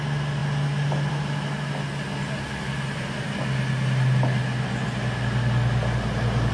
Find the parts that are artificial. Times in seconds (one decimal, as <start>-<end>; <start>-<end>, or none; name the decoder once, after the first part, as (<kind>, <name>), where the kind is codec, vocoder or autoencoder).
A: none